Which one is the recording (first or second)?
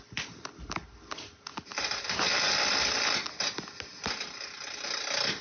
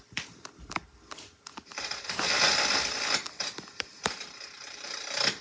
first